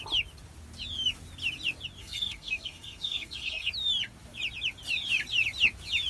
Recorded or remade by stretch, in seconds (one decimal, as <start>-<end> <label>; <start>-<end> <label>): 0.0-2.0 recorded; 2.0-3.7 remade; 3.7-6.1 recorded